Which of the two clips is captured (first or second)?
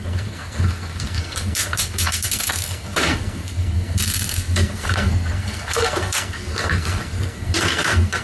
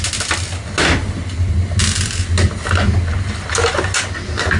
second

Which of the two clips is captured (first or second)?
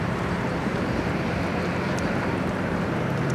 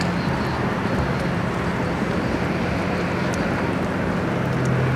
second